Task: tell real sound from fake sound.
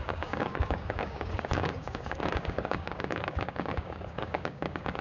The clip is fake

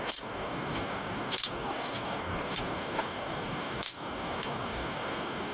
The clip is fake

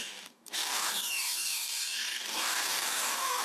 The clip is fake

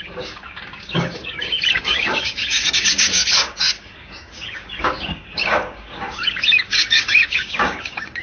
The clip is fake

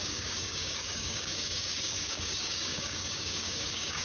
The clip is fake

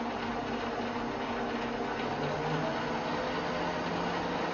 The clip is real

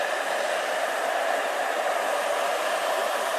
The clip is real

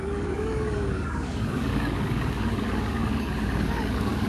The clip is fake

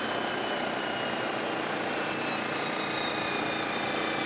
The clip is real